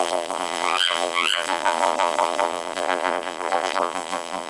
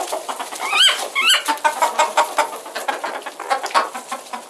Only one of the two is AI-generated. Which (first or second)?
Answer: first